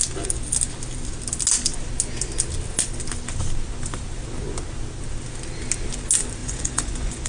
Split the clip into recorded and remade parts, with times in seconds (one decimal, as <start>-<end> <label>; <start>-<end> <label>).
0.0-6.4 recorded; 6.4-7.3 remade